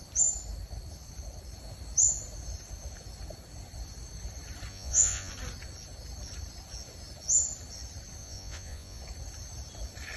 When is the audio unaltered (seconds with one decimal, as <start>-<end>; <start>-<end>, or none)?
0.0-4.7; 5.3-8.2; 9.0-10.2